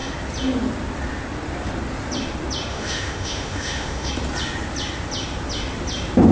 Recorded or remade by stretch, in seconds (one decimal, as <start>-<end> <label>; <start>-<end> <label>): 0.0-2.7 recorded; 2.7-4.1 remade; 4.1-6.3 recorded